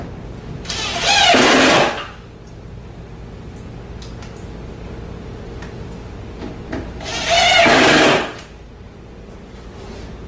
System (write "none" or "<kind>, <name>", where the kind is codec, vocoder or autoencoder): none